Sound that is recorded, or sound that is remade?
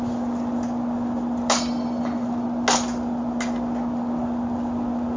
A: recorded